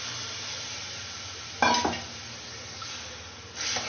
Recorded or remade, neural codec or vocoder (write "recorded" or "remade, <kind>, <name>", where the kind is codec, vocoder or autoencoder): recorded